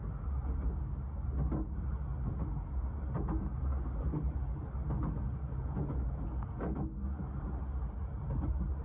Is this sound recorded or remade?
recorded